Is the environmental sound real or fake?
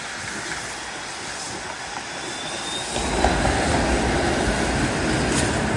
real